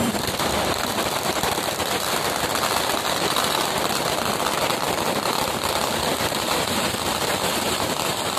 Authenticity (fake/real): fake